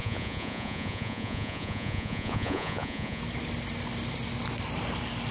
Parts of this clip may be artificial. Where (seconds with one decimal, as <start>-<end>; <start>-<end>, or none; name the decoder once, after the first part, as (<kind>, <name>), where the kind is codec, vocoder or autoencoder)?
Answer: 0.0-3.2 (vocoder, Vocos)